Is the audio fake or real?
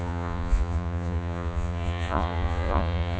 fake